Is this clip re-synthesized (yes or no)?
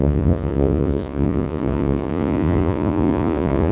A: yes